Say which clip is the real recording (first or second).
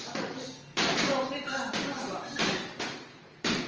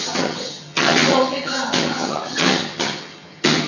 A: first